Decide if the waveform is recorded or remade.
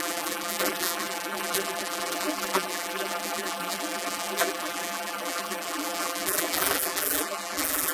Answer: remade